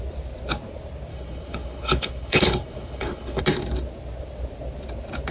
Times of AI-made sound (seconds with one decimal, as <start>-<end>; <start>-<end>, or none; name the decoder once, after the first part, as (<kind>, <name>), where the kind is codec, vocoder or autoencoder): 1.1-3.4 (codec, HILCodec)